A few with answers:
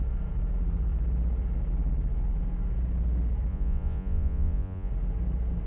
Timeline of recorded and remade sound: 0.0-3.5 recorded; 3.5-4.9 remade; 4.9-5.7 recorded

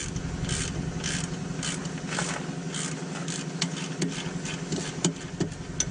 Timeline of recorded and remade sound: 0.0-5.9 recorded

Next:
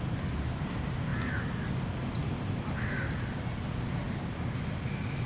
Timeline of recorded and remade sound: 0.0-5.3 recorded

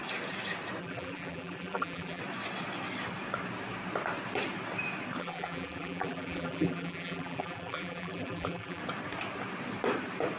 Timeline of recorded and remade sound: 0.0-0.8 recorded; 0.8-2.2 remade; 2.2-5.2 recorded; 5.2-8.8 remade; 8.8-10.4 recorded